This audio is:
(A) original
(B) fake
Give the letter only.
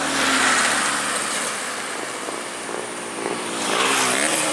B